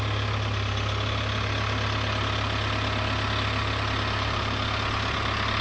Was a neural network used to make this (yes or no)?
no